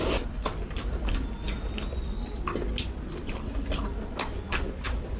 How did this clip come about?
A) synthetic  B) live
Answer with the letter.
B